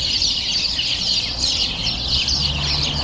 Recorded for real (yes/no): yes